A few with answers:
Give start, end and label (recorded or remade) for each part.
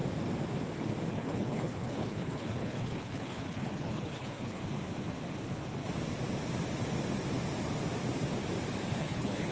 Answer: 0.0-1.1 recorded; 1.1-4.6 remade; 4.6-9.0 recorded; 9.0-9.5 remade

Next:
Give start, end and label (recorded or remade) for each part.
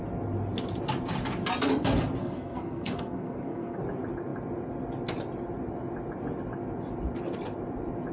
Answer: 0.0-2.2 recorded; 2.2-3.8 remade; 3.8-8.1 recorded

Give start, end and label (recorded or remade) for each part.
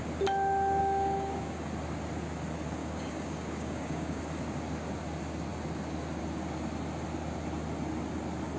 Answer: 0.0-0.8 recorded; 0.8-1.7 remade; 1.7-2.8 recorded; 2.8-4.2 remade; 4.2-8.6 recorded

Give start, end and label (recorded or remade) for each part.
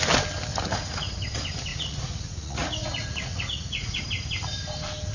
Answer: 0.0-0.5 recorded; 0.5-1.2 remade; 1.2-1.7 recorded; 1.7-4.0 remade; 4.0-5.1 recorded